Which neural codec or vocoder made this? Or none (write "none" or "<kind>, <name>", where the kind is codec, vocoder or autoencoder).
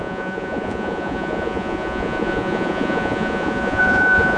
vocoder, Vocos